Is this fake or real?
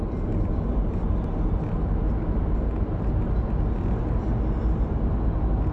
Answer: real